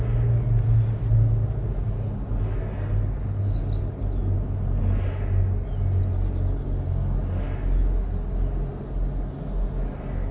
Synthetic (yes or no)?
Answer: no